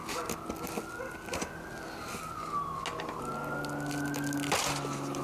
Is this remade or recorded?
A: recorded